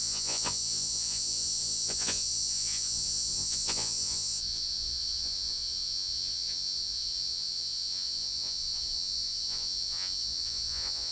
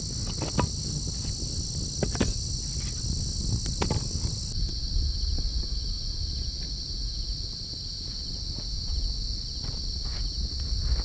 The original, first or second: second